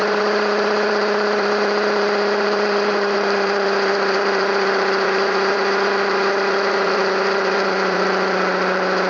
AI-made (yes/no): yes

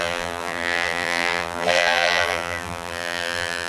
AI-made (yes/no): yes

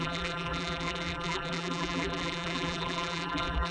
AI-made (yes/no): yes